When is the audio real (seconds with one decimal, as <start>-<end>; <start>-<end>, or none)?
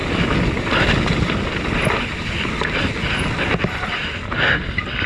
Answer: 0.0-5.1